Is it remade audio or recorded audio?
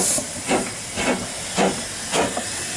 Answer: recorded